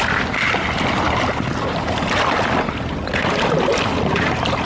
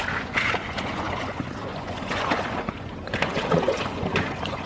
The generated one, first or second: second